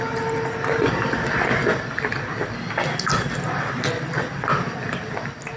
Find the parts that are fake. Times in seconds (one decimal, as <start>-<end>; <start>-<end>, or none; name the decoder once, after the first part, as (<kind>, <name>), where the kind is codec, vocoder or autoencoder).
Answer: none